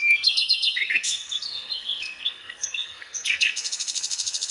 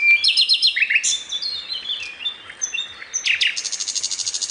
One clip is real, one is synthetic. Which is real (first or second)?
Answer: second